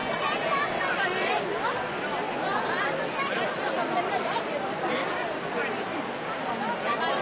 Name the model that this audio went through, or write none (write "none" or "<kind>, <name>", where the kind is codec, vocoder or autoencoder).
none